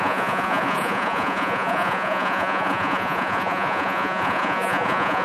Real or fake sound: fake